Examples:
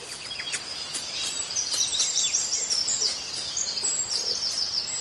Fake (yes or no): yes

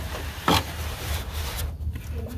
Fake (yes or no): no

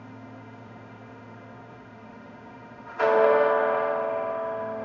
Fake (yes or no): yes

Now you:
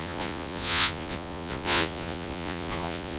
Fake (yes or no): yes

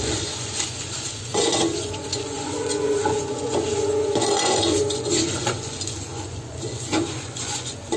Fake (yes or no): yes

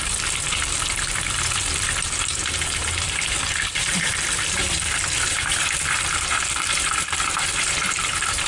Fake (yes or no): yes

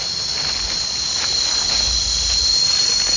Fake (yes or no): no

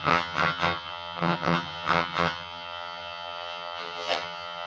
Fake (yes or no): yes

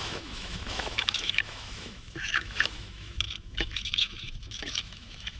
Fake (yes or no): yes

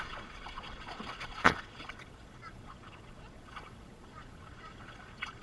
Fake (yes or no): yes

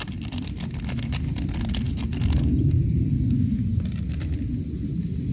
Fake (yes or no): no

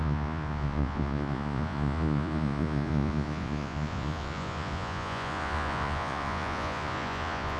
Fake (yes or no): yes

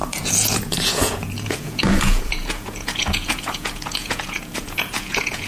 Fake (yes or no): yes